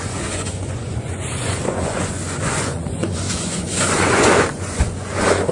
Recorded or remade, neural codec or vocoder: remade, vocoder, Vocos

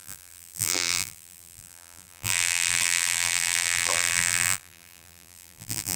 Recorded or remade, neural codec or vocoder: remade, vocoder, BigVGAN v2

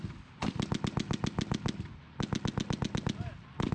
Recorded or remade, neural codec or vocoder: recorded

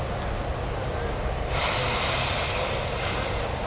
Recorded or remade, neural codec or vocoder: recorded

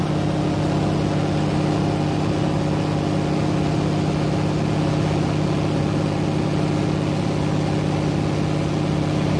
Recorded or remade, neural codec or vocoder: recorded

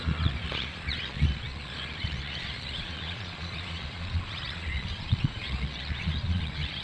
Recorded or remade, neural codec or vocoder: remade, vocoder, Vocos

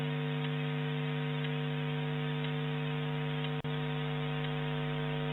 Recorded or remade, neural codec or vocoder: recorded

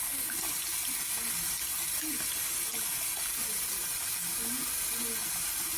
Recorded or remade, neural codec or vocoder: recorded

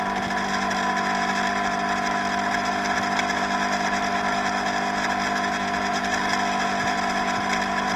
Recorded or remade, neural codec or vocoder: recorded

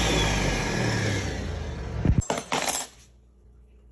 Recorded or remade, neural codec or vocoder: recorded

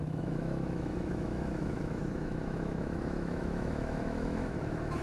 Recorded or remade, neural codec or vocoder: remade, autoencoder, DAC-VAE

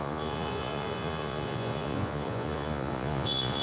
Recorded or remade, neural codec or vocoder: remade, vocoder, Vocos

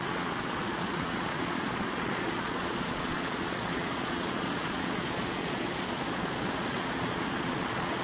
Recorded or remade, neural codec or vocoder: remade, vocoder, Vocos